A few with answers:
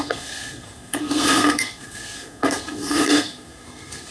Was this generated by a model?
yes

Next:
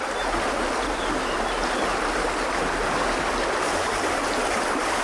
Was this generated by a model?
no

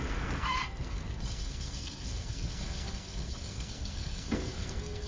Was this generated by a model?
yes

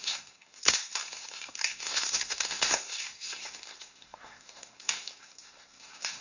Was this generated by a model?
yes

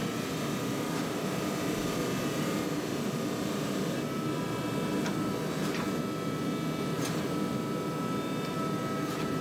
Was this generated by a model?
no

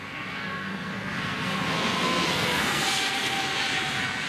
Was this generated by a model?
yes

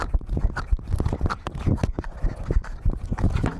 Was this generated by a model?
no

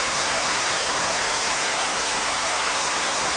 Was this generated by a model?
yes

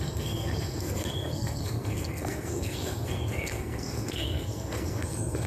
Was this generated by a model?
yes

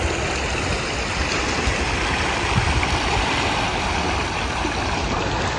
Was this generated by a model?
no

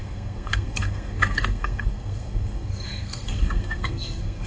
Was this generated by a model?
yes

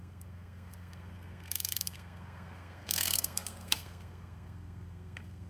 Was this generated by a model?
yes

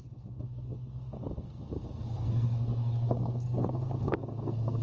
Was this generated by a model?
yes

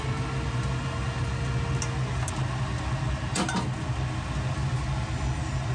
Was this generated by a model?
no